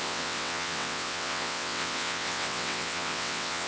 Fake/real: fake